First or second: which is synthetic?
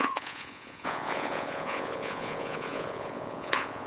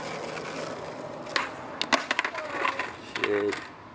first